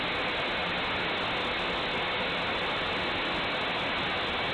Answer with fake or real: real